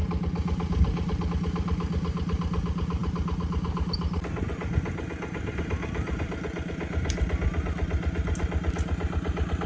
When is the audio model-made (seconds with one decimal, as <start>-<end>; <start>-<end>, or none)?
none